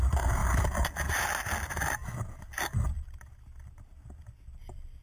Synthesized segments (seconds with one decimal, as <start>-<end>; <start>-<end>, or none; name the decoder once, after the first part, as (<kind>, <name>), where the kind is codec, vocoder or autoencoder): none